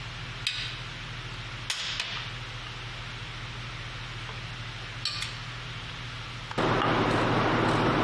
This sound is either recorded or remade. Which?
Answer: recorded